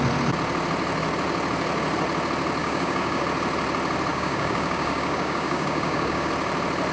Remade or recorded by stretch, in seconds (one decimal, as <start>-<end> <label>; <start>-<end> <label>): 0.0-2.6 recorded; 2.6-3.2 remade; 3.2-4.1 recorded; 4.1-6.3 remade; 6.3-6.9 recorded